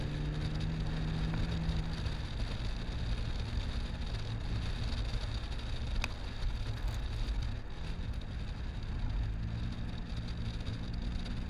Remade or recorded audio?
recorded